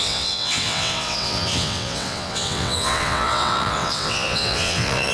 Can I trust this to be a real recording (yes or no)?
no